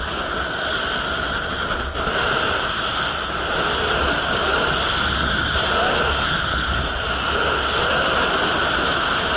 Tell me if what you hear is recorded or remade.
recorded